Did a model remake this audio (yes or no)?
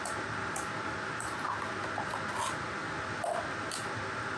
no